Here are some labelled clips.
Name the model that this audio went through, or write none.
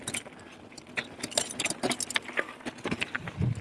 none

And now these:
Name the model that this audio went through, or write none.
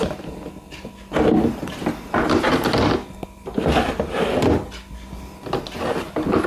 none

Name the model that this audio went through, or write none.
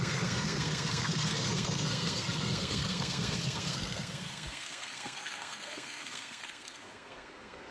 codec, SNAC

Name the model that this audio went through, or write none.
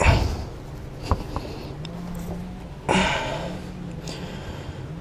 none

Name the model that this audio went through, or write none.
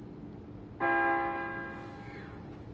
none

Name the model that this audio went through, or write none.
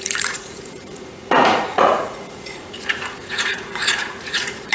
vocoder, Vocos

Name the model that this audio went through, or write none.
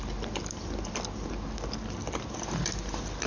none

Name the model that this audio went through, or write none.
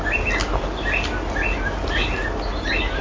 none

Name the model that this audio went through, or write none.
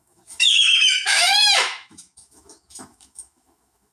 autoencoder, DAC-VAE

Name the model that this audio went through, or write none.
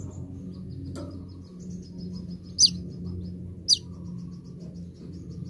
none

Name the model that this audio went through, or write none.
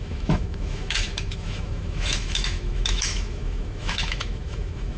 autoencoder, DAC-VAE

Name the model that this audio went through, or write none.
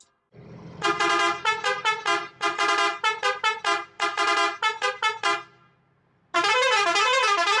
none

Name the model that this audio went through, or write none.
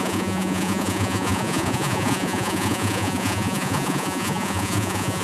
vocoder, Vocos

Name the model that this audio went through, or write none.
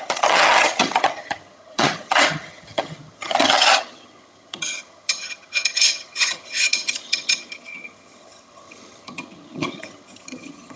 vocoder, HiFi-GAN